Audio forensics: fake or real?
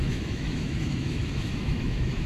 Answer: fake